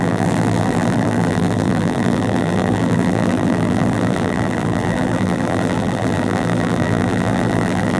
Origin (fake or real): fake